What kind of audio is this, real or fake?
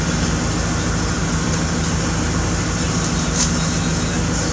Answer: real